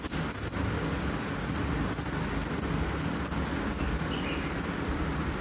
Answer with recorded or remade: recorded